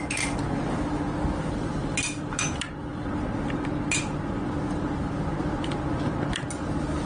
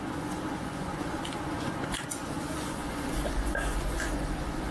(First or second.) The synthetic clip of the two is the second